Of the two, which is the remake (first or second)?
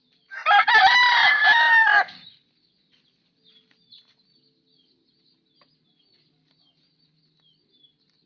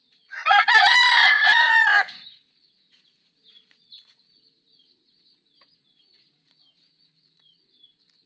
second